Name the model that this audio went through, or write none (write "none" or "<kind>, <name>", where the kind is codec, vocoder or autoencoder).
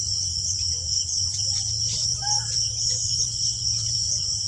none